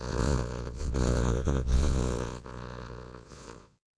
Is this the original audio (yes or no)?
no